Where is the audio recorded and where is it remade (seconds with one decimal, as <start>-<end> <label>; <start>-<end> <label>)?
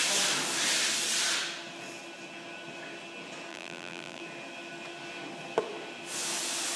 0.0-3.5 recorded; 3.5-4.2 remade; 4.2-6.8 recorded